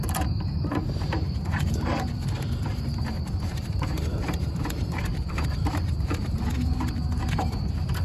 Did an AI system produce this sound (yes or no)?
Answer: yes